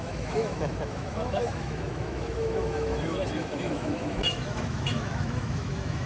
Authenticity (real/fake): fake